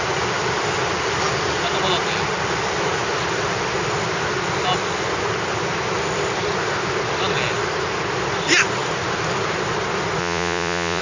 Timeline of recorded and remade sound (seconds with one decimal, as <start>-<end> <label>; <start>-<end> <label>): 0.0-10.2 recorded; 10.2-11.0 remade